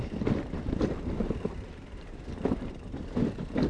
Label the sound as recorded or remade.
remade